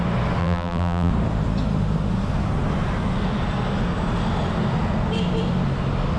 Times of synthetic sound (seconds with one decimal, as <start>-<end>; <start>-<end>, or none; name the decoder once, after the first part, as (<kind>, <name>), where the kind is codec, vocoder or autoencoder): 0.4-1.1 (vocoder, BigVGAN v2)